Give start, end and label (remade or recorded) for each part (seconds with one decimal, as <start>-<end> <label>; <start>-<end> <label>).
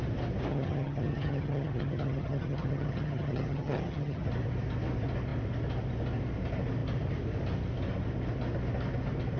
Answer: 0.0-0.5 recorded; 0.5-4.3 remade; 4.3-9.4 recorded